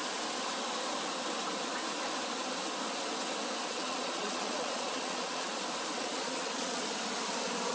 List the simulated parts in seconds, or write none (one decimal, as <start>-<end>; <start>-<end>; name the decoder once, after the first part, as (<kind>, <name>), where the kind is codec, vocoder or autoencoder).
3.7-5.5 (vocoder, Vocos); 6.0-6.8